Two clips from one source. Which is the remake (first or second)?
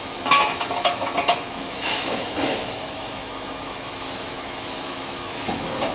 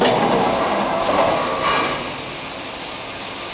first